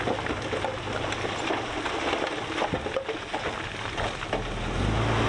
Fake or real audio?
real